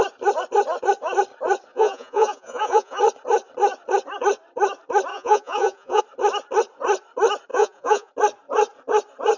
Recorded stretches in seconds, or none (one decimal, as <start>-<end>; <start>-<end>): 0.0-1.7; 3.0-5.1; 6.0-7.5; 8.1-9.4